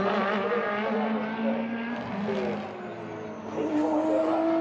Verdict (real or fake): real